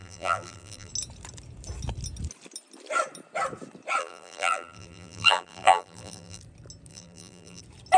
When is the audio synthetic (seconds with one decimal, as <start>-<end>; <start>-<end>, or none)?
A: 0.0-0.9; 4.0-6.4; 6.9-7.6